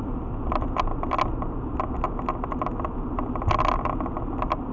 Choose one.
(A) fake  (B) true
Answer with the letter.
B